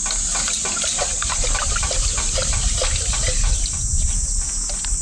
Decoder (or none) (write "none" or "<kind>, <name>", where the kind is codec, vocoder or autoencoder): none